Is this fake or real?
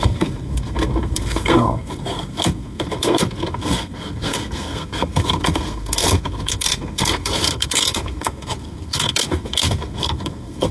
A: fake